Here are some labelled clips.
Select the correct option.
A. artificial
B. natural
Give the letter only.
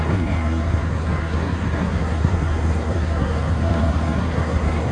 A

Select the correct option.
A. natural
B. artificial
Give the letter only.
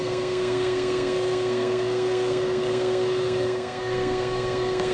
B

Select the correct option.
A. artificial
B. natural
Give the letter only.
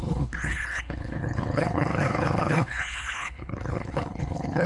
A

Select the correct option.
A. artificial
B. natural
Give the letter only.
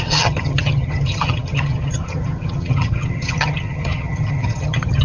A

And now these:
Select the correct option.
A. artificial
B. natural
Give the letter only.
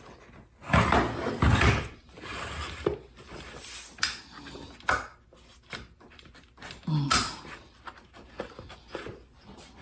B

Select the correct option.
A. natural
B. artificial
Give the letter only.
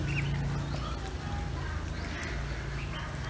A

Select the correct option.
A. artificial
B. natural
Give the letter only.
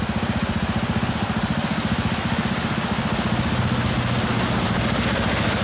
B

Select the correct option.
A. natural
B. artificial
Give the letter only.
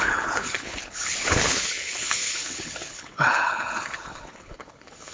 B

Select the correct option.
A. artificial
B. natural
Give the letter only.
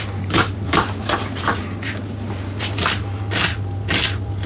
B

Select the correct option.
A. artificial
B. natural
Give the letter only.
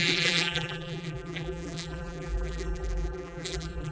A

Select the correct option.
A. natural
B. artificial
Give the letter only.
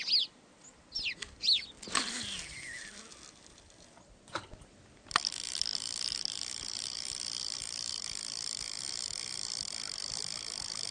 A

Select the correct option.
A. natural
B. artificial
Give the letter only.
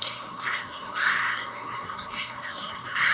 B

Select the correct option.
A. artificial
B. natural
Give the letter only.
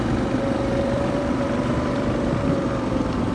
A